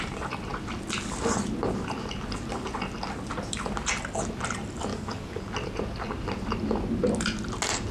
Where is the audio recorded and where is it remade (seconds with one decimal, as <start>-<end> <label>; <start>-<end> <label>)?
0.0-4.9 recorded; 4.9-5.4 remade; 5.4-7.9 recorded